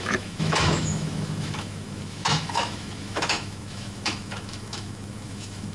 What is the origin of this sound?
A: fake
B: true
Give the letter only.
A